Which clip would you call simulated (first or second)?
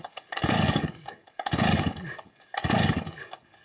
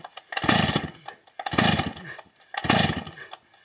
first